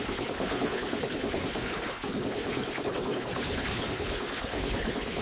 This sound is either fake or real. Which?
fake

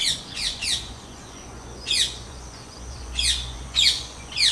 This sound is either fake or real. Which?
fake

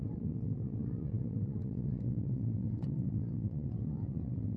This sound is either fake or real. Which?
fake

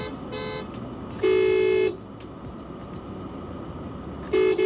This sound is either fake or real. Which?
real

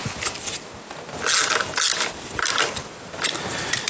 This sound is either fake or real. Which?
real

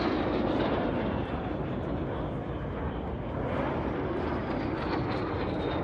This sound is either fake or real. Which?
real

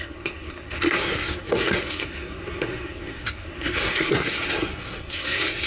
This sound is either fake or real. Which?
fake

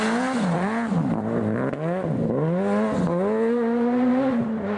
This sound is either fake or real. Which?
real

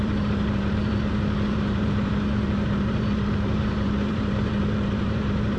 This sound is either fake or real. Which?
fake